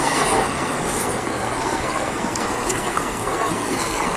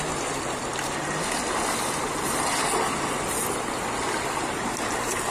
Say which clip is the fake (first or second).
first